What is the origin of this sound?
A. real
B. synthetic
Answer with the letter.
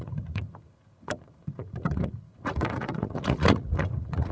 B